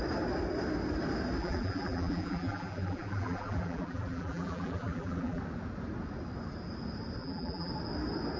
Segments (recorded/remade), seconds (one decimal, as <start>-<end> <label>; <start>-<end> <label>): 0.0-1.4 recorded; 1.4-5.4 remade; 5.4-7.2 recorded; 7.2-7.7 remade; 7.7-8.4 recorded